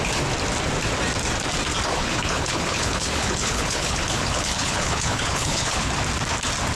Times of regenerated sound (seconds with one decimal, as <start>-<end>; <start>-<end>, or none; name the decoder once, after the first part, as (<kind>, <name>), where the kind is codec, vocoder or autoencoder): 1.9-5.9 (codec, HILCodec)